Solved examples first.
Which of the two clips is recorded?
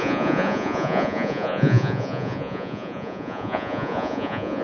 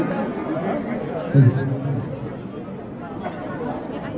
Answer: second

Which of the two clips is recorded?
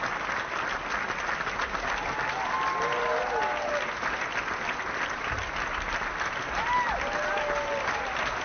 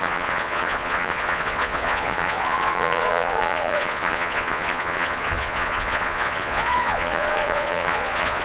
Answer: first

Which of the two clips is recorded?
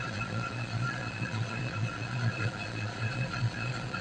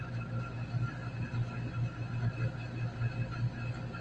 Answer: second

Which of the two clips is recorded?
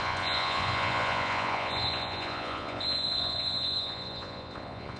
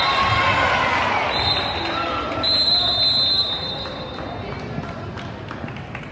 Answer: second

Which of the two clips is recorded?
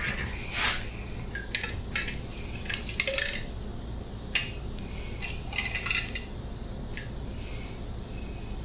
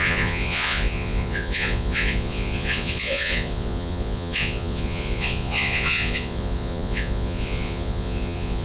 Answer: first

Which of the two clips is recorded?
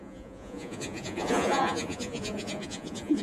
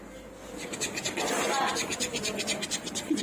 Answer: second